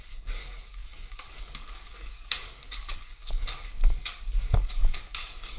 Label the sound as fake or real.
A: fake